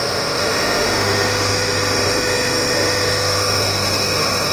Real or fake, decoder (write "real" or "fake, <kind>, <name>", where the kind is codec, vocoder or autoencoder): fake, autoencoder, DAC-VAE